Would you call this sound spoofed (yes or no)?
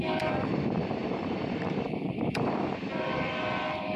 yes